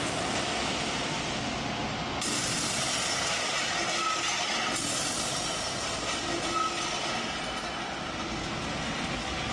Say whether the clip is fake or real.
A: real